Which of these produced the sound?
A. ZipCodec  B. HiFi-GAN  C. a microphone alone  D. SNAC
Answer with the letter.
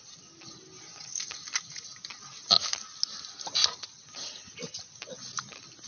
C